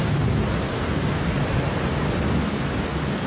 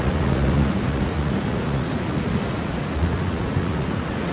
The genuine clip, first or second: first